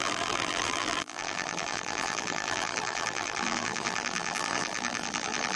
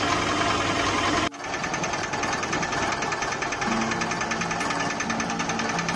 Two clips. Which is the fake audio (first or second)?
first